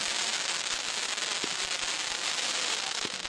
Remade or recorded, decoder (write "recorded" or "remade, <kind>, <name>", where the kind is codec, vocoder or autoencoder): recorded